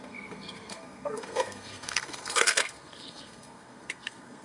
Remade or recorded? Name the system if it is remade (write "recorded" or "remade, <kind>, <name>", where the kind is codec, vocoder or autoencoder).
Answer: remade, codec, SNAC